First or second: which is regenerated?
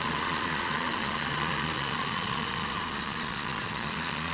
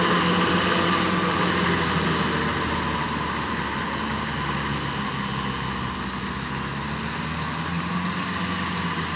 first